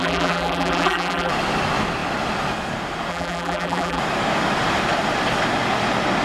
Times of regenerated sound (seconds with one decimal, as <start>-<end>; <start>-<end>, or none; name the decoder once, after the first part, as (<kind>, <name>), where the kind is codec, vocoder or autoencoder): 0.0-1.3 (vocoder, BigVGAN v2); 3.1-4.0